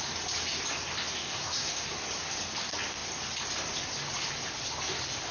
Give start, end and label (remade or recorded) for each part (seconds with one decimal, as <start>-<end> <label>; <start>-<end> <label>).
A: 0.0-1.3 recorded; 1.3-1.8 remade; 1.8-5.3 recorded